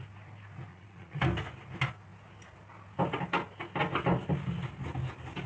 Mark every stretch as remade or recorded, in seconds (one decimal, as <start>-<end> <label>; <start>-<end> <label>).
0.0-0.7 recorded; 0.7-1.2 remade; 1.2-5.5 recorded

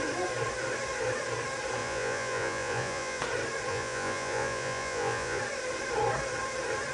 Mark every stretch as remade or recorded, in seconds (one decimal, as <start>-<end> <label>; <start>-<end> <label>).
0.0-1.8 recorded; 1.8-3.2 remade; 3.2-3.7 recorded; 3.7-5.4 remade; 5.4-6.9 recorded

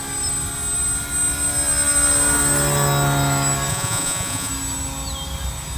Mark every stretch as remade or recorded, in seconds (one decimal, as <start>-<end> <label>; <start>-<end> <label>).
0.0-3.7 recorded; 3.7-4.5 remade; 4.5-5.8 recorded